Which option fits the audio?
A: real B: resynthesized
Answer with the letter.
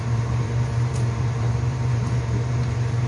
B